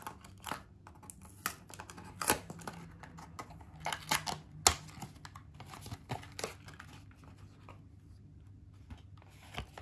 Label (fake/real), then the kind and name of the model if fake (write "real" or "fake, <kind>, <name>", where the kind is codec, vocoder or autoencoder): real